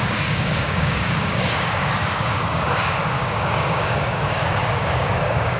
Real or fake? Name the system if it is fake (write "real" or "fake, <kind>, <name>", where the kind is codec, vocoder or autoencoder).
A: fake, codec, DAC